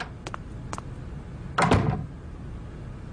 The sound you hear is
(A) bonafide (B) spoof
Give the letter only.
A